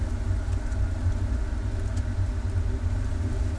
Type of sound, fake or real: real